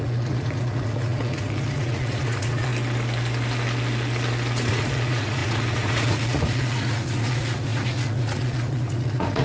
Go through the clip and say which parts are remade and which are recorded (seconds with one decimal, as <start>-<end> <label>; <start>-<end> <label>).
0.0-2.7 remade; 2.7-4.7 recorded; 4.7-9.4 remade